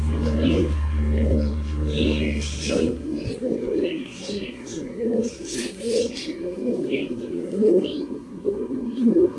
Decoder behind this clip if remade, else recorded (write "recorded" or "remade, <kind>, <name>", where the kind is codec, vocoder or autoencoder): remade, codec, SNAC